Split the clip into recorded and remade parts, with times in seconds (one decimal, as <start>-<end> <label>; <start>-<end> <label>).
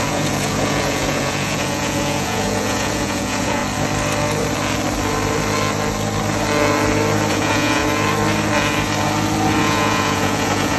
0.0-3.6 remade; 3.6-7.3 recorded; 7.3-7.8 remade; 7.8-9.6 recorded; 9.6-10.8 remade